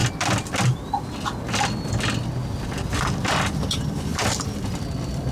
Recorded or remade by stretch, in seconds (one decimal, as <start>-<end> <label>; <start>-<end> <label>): 0.0-3.2 recorded; 3.2-5.3 remade